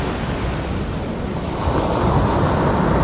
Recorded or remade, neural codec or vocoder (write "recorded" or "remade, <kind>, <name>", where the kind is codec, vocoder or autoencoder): remade, vocoder, BigVGAN v2